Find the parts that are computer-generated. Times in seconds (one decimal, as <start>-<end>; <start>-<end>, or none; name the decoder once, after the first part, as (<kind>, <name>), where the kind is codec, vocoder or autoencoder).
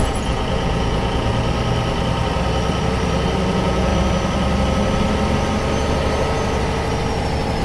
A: 0.0-1.3 (vocoder, Vocos); 3.5-3.9